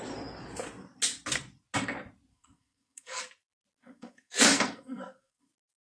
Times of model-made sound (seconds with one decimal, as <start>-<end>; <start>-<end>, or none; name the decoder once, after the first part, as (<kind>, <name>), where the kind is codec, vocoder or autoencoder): 2.3-3.2 (codec, SNAC); 3.8-5.5